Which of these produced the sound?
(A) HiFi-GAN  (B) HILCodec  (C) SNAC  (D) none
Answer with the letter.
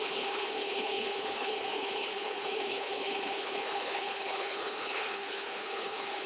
B